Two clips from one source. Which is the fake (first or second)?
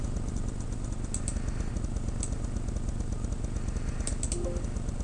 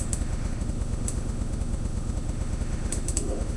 second